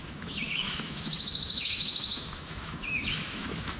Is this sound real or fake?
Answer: fake